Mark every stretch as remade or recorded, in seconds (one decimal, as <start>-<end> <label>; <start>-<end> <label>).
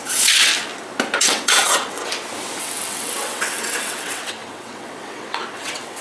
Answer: 0.0-0.5 remade; 0.5-1.2 recorded; 1.2-2.0 remade; 2.0-2.6 recorded; 2.6-6.0 remade